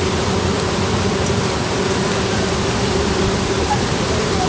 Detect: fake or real real